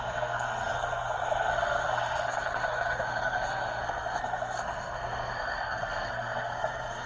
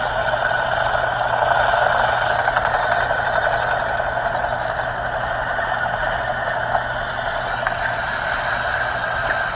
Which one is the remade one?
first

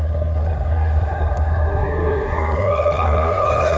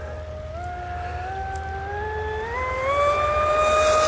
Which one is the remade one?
first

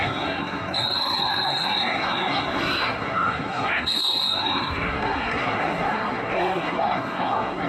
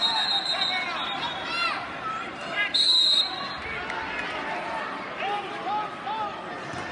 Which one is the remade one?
first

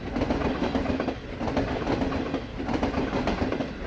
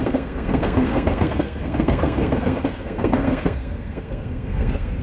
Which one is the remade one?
second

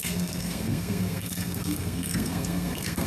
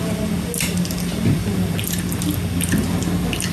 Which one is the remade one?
first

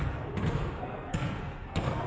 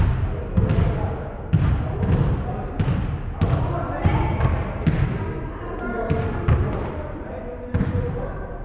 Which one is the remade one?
first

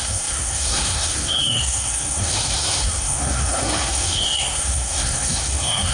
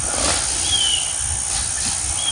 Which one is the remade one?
first